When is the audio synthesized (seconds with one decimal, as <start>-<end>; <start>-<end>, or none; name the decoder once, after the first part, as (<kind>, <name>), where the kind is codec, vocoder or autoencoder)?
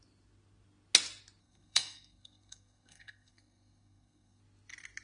1.4-4.4 (codec, SNAC)